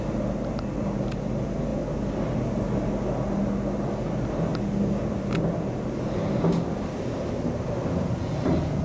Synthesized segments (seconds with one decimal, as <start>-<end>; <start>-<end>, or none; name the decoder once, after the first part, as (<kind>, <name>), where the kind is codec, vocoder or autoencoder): none